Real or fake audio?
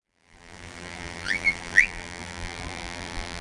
fake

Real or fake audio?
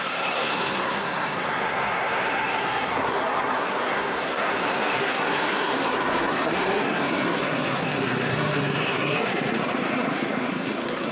fake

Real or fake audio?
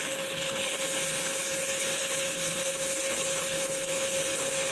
fake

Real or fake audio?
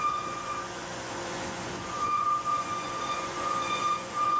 fake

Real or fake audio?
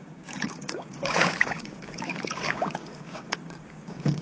fake